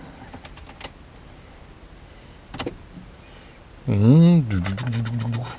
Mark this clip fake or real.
real